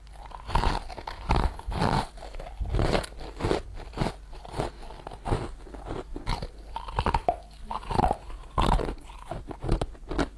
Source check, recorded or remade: recorded